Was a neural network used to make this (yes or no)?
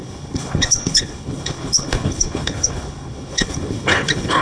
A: yes